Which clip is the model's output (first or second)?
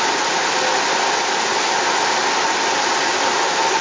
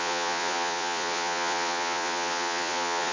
second